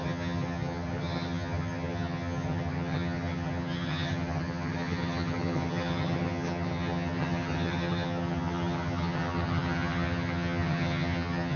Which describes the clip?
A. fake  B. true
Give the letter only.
A